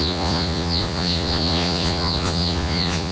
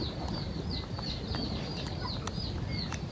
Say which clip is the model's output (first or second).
first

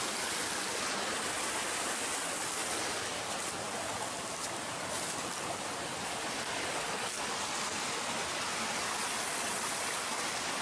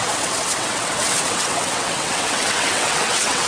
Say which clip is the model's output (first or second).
second